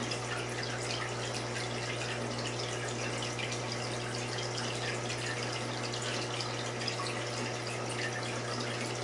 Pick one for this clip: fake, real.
real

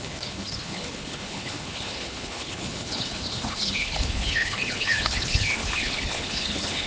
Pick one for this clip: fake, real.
fake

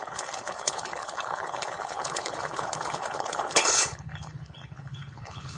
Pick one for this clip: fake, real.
fake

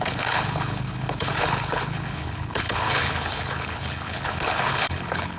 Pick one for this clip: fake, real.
fake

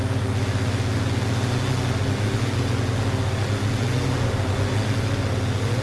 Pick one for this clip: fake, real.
real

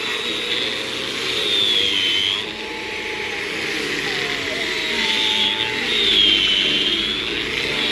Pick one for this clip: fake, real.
real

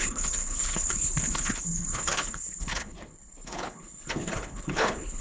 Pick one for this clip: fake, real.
fake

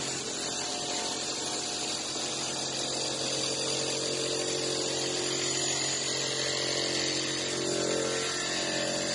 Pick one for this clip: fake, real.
real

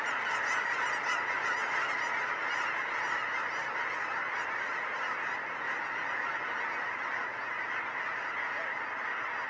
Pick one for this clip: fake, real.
real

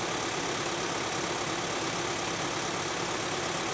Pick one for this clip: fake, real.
real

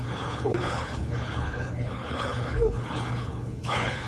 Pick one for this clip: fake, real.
fake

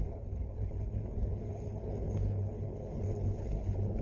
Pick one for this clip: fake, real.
fake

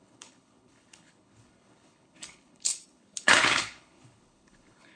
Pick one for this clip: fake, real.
fake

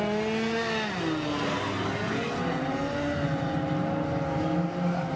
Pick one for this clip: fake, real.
real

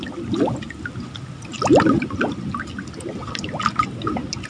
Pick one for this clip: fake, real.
real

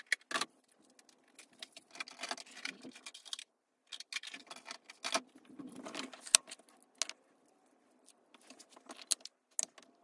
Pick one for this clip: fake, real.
real